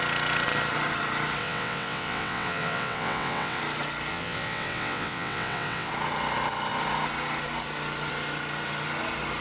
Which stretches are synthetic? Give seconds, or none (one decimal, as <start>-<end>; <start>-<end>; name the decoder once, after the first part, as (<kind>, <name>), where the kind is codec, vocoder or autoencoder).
1.4-3.6 (vocoder, WaveNeXt); 4.1-5.9